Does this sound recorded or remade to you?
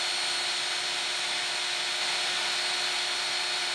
recorded